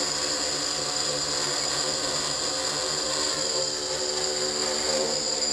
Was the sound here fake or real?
real